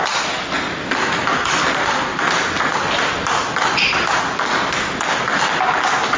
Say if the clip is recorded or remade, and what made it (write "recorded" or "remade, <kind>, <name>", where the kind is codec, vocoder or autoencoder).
recorded